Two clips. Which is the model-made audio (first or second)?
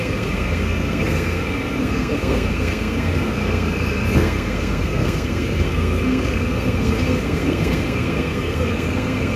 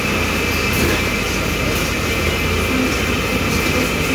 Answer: first